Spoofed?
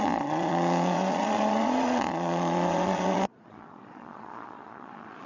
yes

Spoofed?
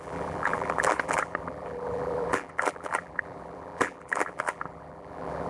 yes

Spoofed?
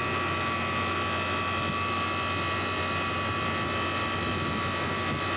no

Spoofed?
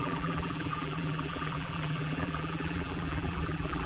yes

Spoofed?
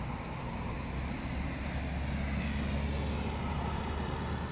no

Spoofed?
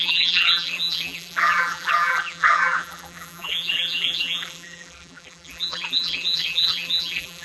yes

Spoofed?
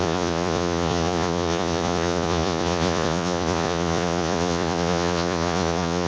yes